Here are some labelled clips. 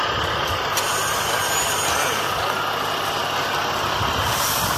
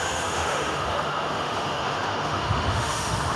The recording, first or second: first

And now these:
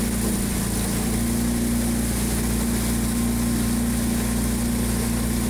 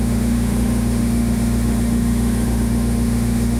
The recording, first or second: first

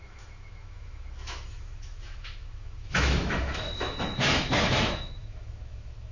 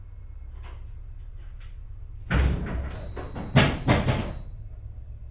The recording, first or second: second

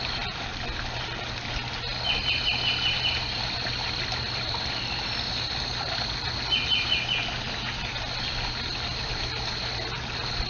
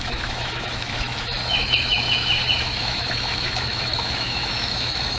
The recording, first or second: first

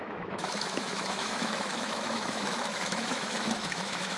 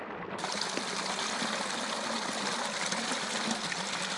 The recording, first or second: second